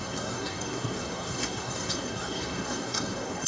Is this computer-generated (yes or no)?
yes